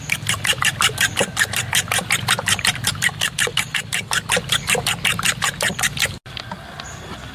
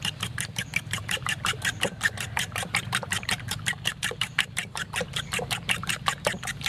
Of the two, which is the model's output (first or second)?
second